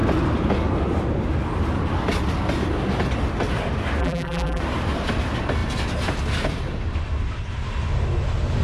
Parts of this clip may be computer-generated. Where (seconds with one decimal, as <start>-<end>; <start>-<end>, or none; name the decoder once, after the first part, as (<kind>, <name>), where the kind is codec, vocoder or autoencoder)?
4.0-4.6 (vocoder, BigVGAN v2)